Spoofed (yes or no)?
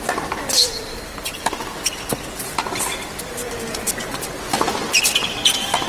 yes